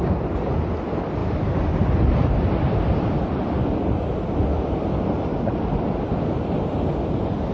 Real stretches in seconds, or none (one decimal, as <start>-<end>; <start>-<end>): 0.0-7.5